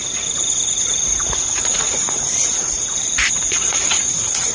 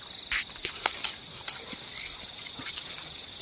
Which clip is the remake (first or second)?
first